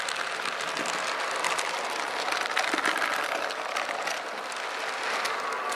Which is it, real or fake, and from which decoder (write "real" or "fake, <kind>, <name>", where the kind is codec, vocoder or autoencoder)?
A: real